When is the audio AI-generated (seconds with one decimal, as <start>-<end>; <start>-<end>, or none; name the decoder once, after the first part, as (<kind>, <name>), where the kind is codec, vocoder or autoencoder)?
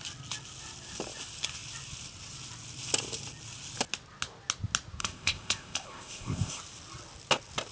5.0-6.6 (codec, ZipCodec)